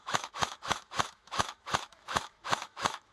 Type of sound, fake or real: fake